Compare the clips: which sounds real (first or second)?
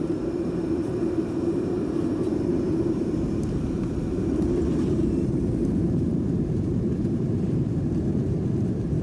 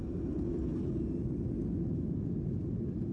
second